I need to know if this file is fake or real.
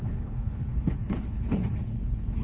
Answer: fake